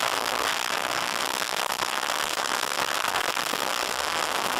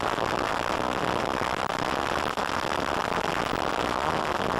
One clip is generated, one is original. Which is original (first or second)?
second